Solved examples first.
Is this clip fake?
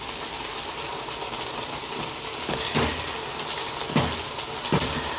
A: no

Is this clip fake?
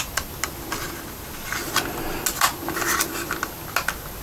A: no